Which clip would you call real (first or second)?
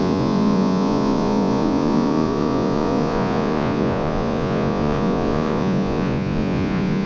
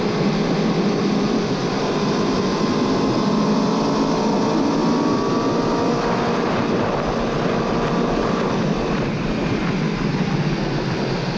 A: second